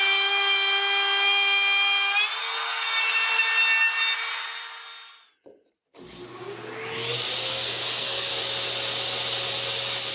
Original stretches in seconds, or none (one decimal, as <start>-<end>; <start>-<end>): 0.0-2.4; 2.9-7.5; 8.3-10.1